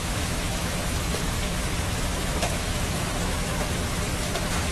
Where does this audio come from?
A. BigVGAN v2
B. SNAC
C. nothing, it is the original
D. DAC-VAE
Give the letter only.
D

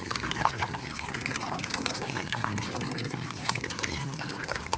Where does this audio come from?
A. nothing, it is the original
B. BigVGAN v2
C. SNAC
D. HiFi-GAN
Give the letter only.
C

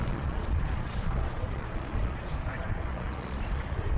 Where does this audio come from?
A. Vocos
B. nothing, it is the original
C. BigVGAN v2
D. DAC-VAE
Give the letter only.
A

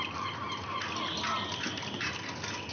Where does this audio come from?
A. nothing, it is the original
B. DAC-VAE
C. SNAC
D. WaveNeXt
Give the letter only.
A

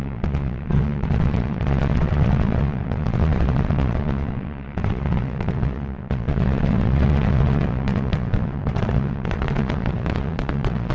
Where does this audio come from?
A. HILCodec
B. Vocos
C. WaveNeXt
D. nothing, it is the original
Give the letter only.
C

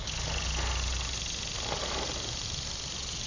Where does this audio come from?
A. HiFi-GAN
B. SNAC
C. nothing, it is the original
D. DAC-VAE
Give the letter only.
C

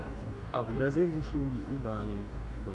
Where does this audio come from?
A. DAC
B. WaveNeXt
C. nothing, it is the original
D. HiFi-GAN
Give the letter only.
A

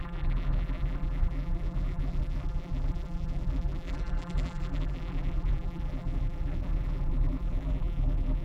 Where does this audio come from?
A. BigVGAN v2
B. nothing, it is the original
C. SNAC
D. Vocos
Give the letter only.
A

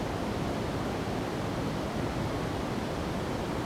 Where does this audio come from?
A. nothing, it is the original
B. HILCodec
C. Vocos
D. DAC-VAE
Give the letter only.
A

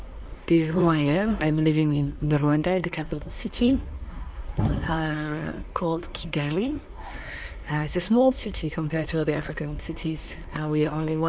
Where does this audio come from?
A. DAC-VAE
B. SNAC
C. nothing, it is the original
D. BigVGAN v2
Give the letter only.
B